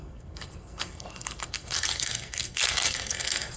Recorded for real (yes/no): no